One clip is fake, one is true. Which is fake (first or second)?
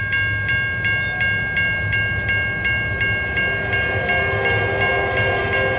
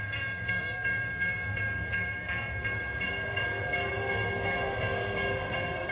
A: second